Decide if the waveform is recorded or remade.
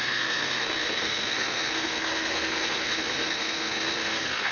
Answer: remade